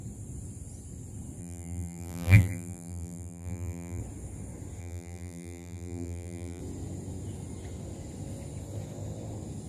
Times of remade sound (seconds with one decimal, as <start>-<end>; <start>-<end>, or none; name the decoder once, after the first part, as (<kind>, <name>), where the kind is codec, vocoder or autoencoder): 1.4-4.0 (vocoder, BigVGAN v2); 4.8-6.6